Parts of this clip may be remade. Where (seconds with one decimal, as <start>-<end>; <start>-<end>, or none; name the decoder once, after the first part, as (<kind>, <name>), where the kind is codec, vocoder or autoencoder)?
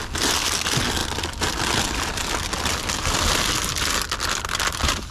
none